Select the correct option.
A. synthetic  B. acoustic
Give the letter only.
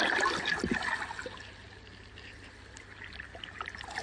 B